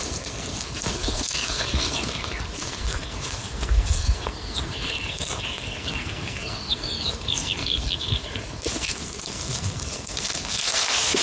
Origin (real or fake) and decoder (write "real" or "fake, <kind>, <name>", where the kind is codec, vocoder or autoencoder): fake, codec, SNAC